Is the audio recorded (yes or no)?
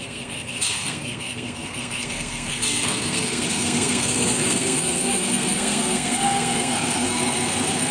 no